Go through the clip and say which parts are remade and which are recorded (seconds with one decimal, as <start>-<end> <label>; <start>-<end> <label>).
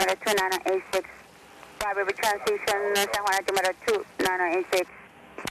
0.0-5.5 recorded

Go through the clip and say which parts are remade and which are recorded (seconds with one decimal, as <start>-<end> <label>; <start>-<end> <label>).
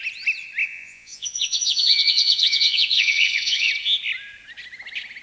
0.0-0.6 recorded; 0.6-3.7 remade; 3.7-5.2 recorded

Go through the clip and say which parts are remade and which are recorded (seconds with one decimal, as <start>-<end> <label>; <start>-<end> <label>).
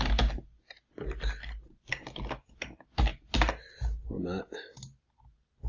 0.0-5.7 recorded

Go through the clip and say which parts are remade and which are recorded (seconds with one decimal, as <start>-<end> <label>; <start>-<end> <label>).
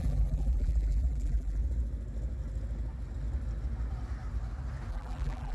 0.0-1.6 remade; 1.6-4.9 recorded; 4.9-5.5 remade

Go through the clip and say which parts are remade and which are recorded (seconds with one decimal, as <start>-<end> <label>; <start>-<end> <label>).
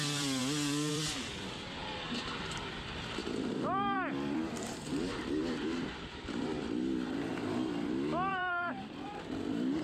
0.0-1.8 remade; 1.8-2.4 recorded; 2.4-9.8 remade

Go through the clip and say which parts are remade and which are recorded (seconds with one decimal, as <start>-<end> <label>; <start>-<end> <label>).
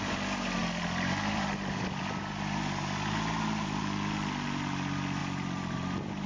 0.0-0.6 recorded; 0.6-3.8 remade; 3.8-5.2 recorded; 5.2-6.3 remade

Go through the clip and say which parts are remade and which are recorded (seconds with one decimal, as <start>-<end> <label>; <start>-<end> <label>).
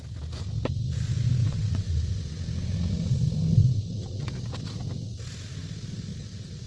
0.0-1.4 recorded; 1.4-1.9 remade; 1.9-3.6 recorded; 3.6-4.3 remade; 4.3-6.1 recorded; 6.1-6.7 remade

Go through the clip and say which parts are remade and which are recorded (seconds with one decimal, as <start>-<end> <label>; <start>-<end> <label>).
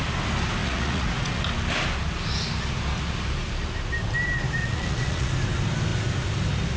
0.0-0.6 recorded; 0.6-1.4 remade; 1.4-4.6 recorded; 4.6-5.3 remade; 5.3-6.8 recorded